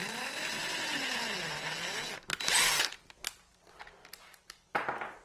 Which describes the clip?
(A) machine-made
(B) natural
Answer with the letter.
B